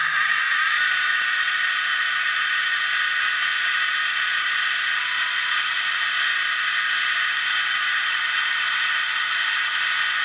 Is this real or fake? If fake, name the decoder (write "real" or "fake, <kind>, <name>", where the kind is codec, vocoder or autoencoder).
real